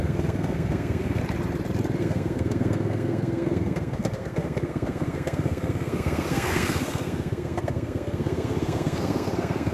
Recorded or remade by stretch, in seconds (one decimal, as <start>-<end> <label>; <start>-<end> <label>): 0.0-1.2 remade; 1.2-2.0 recorded; 2.0-9.7 remade